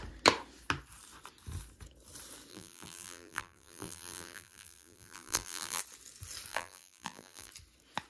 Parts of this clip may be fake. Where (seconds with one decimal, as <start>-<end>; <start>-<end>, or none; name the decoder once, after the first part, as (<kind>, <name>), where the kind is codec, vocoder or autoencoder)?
2.5-5.8 (vocoder, BigVGAN v2); 6.5-7.5